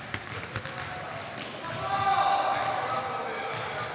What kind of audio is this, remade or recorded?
recorded